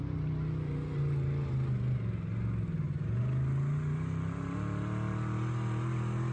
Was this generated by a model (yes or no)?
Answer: no